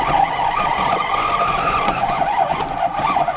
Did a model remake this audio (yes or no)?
yes